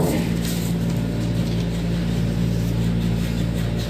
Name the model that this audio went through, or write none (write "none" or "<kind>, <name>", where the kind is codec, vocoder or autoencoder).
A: none